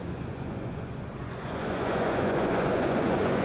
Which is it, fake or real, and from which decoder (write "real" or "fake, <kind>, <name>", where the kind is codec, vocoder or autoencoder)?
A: fake, vocoder, Vocos